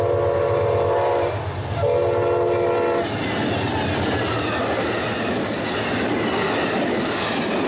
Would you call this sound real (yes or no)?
yes